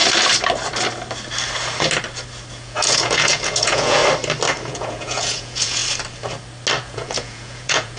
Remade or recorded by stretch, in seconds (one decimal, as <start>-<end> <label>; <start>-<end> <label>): 0.0-2.5 recorded; 2.5-4.0 remade; 4.0-4.7 recorded; 4.7-5.8 remade; 5.8-6.8 recorded; 6.8-8.0 remade